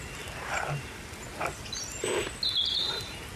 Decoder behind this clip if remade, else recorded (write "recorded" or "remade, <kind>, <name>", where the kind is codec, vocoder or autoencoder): recorded